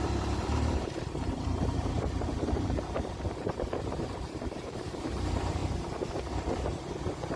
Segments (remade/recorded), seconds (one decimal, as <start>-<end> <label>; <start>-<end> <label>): 0.0-5.6 remade; 5.6-6.5 recorded; 6.5-7.4 remade